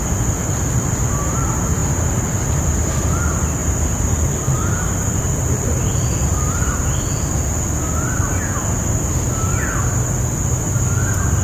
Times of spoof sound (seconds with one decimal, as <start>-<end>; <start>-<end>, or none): 1.8-2.6; 3.6-6.8